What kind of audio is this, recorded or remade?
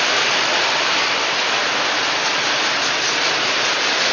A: recorded